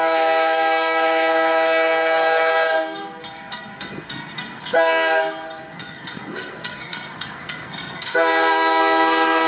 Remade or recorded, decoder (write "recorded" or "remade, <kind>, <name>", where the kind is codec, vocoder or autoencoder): remade, codec, SNAC